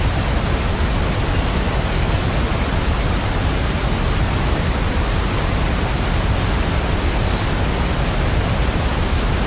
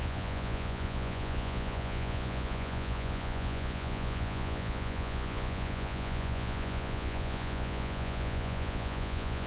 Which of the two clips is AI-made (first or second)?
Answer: second